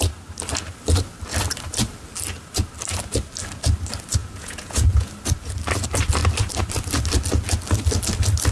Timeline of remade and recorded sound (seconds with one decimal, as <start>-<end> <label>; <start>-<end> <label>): 0.0-4.2 recorded; 4.2-5.1 remade; 5.1-8.5 recorded